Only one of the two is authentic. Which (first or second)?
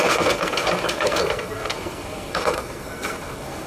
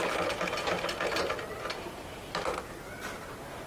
second